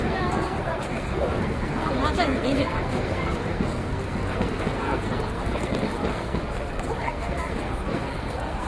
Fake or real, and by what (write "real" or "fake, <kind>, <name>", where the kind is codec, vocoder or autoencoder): fake, codec, SNAC